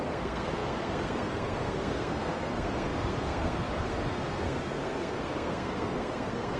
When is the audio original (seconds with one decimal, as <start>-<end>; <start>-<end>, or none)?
none